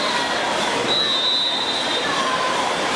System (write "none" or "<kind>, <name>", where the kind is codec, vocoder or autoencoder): none